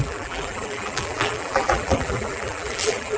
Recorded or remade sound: remade